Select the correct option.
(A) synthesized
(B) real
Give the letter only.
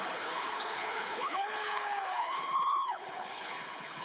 A